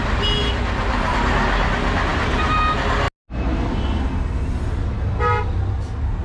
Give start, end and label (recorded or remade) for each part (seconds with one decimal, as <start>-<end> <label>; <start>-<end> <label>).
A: 0.0-6.2 recorded